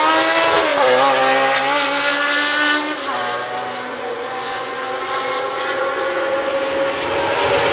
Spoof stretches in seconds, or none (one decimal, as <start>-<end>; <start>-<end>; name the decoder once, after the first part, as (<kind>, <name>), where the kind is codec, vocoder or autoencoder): 3.9-6.5 (vocoder, Vocos)